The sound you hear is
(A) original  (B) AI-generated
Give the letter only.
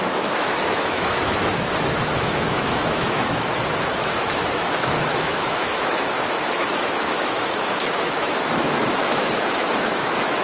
B